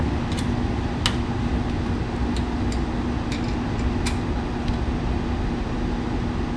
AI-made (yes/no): no